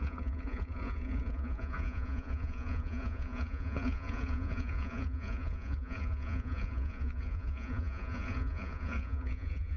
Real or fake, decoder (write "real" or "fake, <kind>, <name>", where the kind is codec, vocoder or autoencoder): fake, vocoder, Vocos